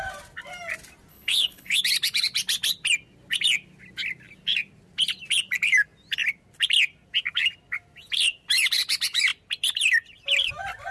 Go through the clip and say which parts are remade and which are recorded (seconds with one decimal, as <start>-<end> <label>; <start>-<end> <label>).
0.0-1.1 recorded; 1.1-1.8 remade; 1.8-10.9 recorded